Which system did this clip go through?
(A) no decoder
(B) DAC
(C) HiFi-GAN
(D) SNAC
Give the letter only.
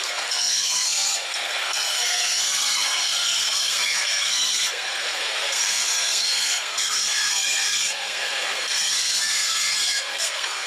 D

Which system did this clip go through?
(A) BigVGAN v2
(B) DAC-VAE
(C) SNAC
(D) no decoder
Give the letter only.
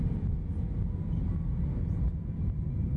D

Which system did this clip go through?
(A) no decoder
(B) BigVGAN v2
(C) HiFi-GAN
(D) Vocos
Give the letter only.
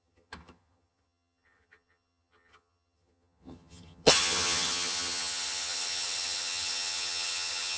C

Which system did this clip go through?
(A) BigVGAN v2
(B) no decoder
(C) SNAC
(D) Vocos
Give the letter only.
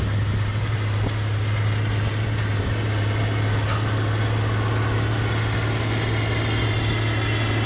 B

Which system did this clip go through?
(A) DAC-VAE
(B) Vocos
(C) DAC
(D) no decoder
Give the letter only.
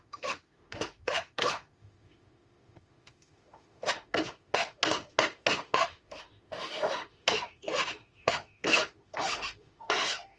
A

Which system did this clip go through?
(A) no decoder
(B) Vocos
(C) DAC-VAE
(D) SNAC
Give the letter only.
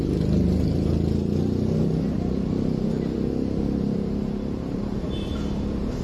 A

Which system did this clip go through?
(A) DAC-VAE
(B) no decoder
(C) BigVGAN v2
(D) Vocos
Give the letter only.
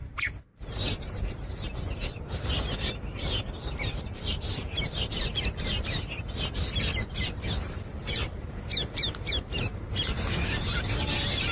C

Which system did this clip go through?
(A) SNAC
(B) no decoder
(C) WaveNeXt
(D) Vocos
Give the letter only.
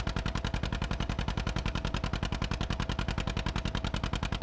B